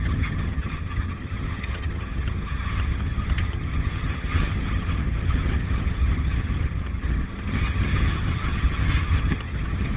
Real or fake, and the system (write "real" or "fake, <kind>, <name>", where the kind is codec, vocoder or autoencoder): fake, vocoder, HiFi-GAN